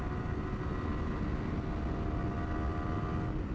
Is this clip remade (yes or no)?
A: no